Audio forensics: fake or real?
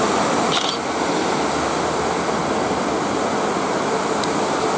real